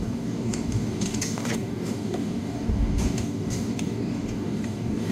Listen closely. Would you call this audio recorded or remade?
remade